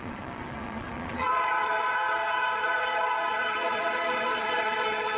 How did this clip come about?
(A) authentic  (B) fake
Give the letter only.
B